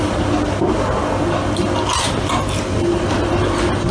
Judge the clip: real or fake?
real